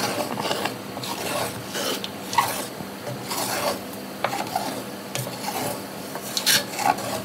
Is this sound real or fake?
real